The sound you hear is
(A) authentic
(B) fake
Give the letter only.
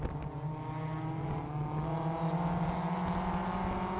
A